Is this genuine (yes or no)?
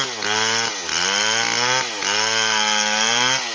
yes